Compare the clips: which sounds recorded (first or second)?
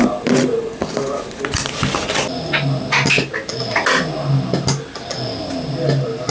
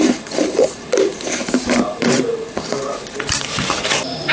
first